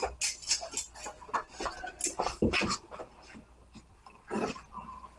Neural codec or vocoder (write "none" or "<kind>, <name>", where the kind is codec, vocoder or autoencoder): none